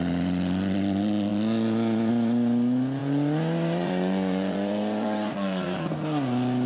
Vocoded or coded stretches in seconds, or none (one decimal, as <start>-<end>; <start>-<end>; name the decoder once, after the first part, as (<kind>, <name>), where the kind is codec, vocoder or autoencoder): 3.0-5.8 (vocoder, Vocos)